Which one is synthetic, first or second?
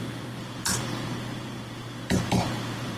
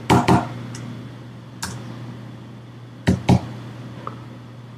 first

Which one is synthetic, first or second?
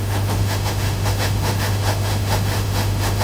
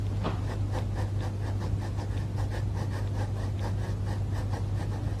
first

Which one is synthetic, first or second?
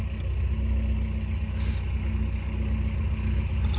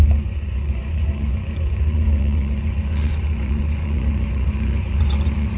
second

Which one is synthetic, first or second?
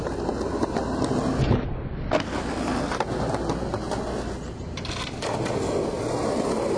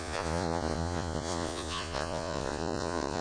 second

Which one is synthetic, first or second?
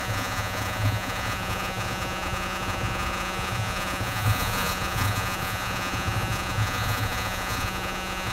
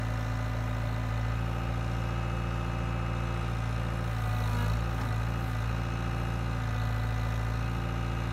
first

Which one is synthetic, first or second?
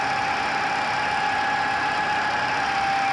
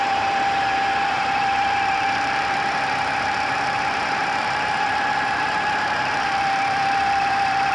second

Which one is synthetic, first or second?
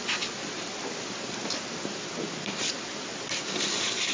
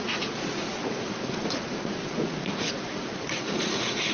second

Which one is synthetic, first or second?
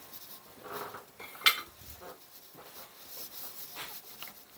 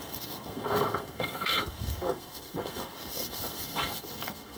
second